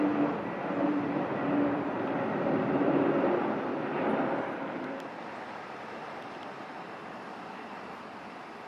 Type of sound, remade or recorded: remade